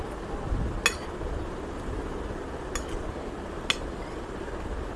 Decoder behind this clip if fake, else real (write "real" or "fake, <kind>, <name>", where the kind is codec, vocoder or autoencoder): real